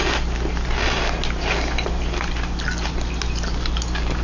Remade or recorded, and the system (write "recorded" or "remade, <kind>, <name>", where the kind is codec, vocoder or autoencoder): recorded